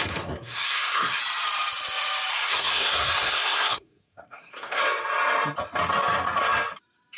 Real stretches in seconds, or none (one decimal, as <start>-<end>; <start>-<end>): 1.2-2.3; 4.8-7.2